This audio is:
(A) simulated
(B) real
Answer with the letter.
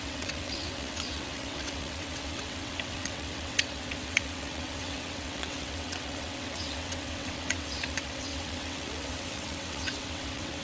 A